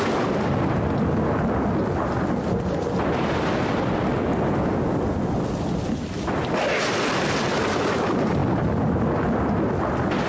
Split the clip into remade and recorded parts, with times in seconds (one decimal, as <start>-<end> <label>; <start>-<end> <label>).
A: 0.0-10.3 recorded